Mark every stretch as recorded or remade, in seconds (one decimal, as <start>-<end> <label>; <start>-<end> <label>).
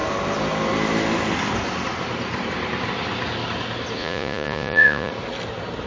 0.0-4.0 recorded; 4.0-5.1 remade; 5.1-5.9 recorded